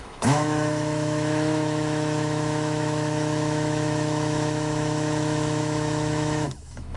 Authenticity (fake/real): fake